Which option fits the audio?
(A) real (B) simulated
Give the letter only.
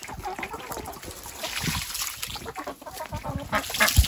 A